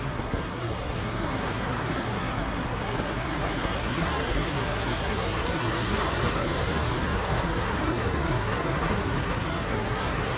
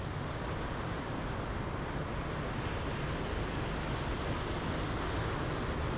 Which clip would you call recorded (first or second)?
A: second